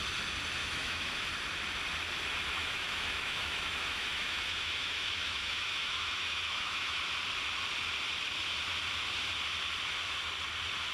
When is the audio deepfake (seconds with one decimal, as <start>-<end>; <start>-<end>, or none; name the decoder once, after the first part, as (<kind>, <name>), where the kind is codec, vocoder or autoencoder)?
0.6-1.3 (autoencoder, DAC-VAE); 2.6-7.0